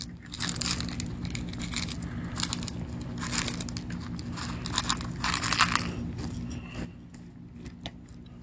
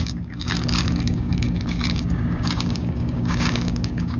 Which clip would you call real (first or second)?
first